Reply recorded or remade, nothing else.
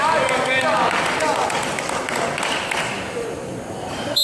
recorded